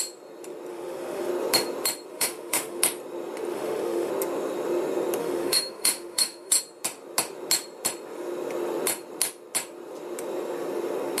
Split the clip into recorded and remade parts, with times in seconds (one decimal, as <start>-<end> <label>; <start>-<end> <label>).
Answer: 0.0-0.7 recorded; 0.7-1.3 remade; 1.3-2.1 recorded; 2.1-2.8 remade; 2.8-3.5 recorded; 3.5-4.1 remade; 4.1-5.2 recorded; 5.2-6.6 remade; 6.6-11.2 recorded